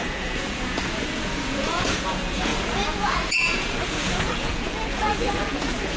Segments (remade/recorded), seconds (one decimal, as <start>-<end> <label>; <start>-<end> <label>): 0.0-6.0 remade